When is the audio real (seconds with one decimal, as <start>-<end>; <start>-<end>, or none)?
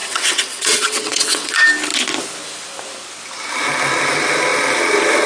1.5-5.3